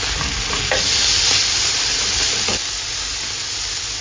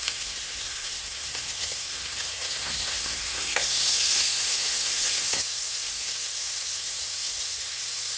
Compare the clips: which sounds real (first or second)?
first